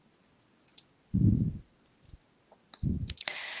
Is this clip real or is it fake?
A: real